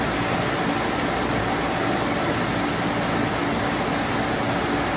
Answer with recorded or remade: recorded